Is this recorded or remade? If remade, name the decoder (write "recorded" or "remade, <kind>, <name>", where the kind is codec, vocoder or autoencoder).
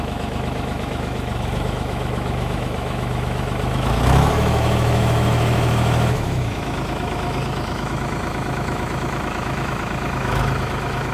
remade, autoencoder, DAC-VAE